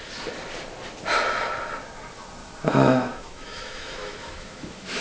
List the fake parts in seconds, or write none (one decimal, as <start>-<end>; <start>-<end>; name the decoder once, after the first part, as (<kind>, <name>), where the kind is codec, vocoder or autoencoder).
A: 2.4-5.0 (autoencoder, DAC-VAE)